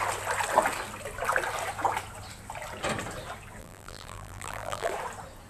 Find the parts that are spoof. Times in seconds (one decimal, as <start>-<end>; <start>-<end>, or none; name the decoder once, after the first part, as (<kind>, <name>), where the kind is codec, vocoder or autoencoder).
3.6-4.9 (vocoder, BigVGAN v2)